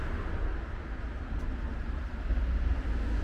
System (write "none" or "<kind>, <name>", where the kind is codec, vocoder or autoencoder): none